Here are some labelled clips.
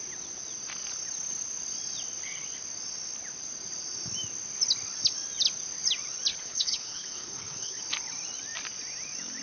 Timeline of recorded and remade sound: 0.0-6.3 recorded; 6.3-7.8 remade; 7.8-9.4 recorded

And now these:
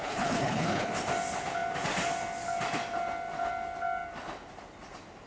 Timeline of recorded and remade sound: 0.0-0.9 remade; 0.9-5.3 recorded

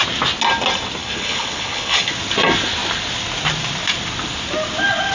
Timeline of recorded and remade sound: 0.0-1.0 recorded; 1.0-2.1 remade; 2.1-5.1 recorded

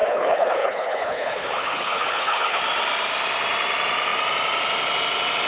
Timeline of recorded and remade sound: 0.0-2.6 remade; 2.6-5.5 recorded

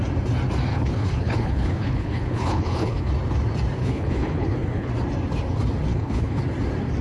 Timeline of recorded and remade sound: 0.0-0.7 recorded; 0.7-3.1 remade; 3.1-3.8 recorded; 3.8-4.9 remade; 4.9-5.9 recorded; 5.9-6.4 remade; 6.4-7.0 recorded

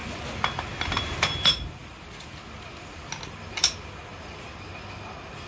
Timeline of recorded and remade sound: 0.0-5.5 recorded